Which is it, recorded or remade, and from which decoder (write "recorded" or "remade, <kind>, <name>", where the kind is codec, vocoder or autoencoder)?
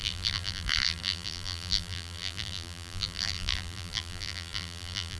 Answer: remade, vocoder, BigVGAN v2